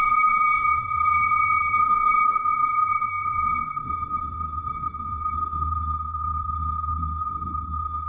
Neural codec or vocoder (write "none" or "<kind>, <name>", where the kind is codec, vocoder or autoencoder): codec, SNAC